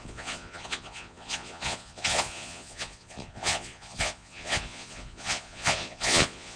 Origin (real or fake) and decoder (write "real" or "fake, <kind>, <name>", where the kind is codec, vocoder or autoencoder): fake, vocoder, Vocos